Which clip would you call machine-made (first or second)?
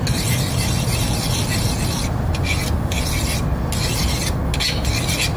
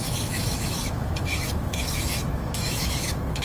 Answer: second